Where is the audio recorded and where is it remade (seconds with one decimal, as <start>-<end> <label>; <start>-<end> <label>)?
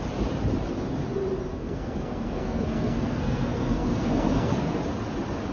0.0-1.5 recorded; 1.5-4.8 remade; 4.8-5.5 recorded